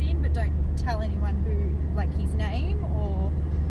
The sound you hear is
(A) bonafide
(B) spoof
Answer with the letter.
A